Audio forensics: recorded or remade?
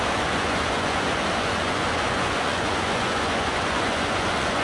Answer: remade